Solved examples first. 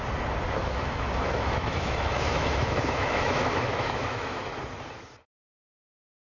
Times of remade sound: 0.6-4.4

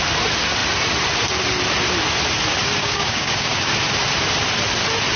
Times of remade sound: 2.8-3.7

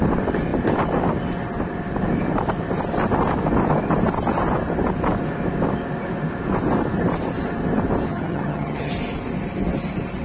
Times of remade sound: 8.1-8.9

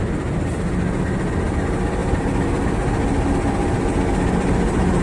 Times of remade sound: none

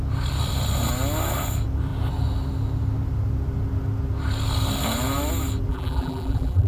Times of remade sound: 5.7-6.7

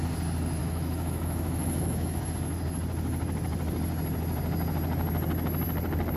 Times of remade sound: 0.6-2.2

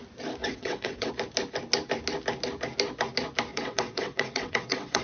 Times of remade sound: 0.4-1.1; 3.5-5.0

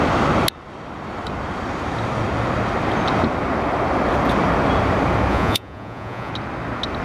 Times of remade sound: 5.3-6.3